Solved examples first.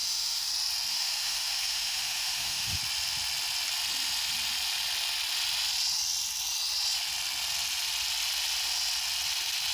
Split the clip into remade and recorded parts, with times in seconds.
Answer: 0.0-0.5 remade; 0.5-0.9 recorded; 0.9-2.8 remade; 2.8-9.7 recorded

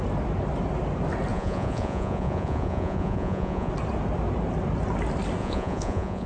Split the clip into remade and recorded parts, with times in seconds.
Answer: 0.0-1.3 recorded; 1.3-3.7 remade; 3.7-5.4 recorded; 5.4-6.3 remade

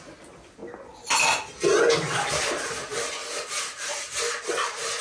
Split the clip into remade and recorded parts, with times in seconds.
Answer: 0.0-3.2 recorded; 3.2-4.4 remade; 4.4-5.0 recorded